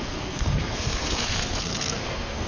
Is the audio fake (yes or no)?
yes